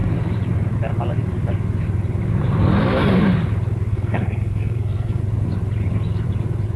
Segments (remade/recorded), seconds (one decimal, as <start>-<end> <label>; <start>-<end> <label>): 0.0-3.9 recorded; 3.9-5.2 remade; 5.2-6.8 recorded